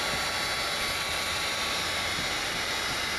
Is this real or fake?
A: real